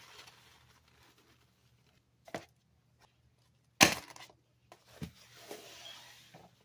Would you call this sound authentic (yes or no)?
yes